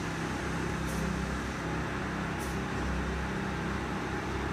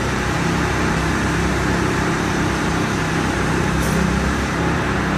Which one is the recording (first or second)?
first